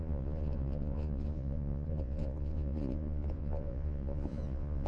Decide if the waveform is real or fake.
fake